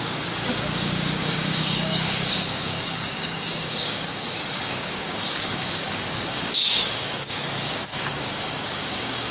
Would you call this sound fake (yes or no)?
yes